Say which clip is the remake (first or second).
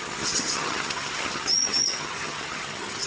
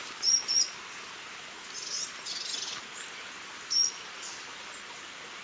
first